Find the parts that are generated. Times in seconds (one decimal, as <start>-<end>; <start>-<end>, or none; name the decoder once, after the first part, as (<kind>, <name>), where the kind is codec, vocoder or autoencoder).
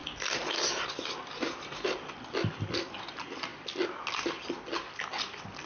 none